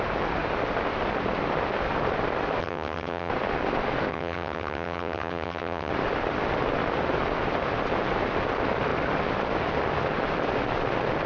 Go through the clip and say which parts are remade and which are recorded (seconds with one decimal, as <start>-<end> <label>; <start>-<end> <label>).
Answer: 0.0-2.6 recorded; 2.6-3.3 remade; 3.3-4.1 recorded; 4.1-5.9 remade; 5.9-11.3 recorded